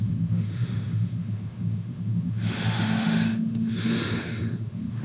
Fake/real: fake